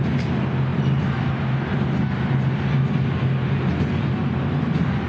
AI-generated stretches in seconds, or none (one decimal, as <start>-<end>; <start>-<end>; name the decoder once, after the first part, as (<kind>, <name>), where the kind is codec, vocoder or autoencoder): none

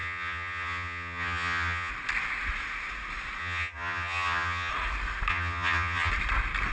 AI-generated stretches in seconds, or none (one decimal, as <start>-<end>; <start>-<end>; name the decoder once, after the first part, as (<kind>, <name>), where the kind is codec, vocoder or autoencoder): 0.0-1.9 (vocoder, HiFi-GAN); 3.4-4.7; 5.3-6.1